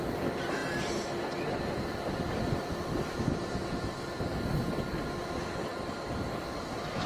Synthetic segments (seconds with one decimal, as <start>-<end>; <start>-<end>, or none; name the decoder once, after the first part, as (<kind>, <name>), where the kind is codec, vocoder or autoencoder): none